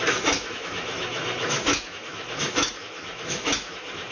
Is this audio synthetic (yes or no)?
yes